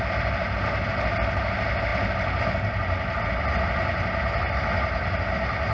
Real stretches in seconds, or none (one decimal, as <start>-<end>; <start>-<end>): 0.0-5.7